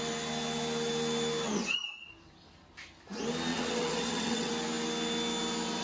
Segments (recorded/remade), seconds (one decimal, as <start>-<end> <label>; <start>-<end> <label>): 0.0-3.5 recorded; 3.5-4.5 remade; 4.5-5.8 recorded